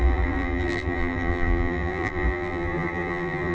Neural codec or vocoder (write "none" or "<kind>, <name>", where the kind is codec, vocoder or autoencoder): vocoder, BigVGAN v2